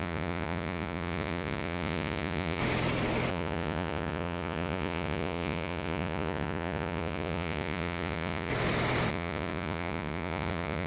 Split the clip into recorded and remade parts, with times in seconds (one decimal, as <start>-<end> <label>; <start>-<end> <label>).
0.0-2.6 remade; 2.6-3.3 recorded; 3.3-8.5 remade; 8.5-9.1 recorded; 9.1-10.9 remade